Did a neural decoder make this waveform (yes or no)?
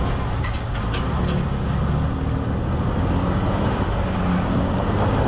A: no